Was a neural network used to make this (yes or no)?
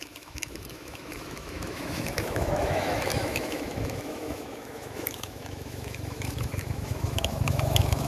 yes